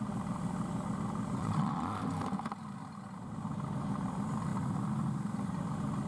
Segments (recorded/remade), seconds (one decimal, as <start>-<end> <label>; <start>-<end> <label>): 0.0-1.4 recorded; 1.4-2.0 remade; 2.0-6.1 recorded